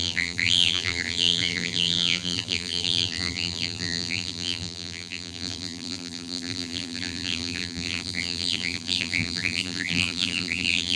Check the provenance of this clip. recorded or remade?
remade